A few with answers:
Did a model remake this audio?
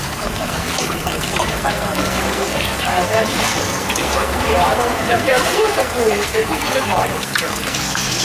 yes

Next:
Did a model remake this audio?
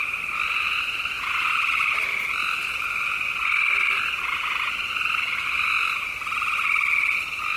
no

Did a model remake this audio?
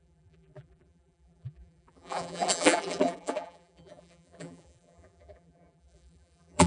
yes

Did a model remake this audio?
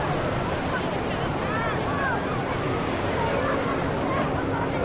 no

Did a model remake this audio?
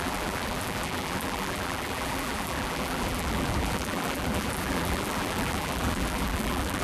yes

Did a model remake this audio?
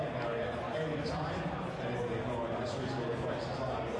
no